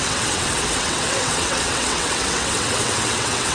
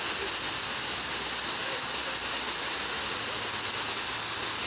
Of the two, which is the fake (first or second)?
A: first